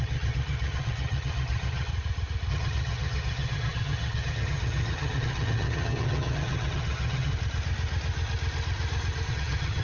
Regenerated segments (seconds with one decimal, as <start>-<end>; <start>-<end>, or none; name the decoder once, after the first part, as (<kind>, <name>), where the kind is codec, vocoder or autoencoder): 0.0-1.9 (vocoder, HiFi-GAN); 2.5-7.3; 9.3-9.8